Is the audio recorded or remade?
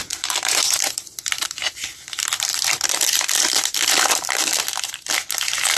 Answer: remade